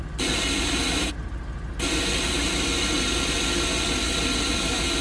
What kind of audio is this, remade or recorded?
recorded